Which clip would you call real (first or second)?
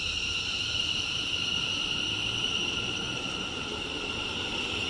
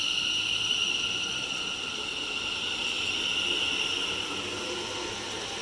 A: second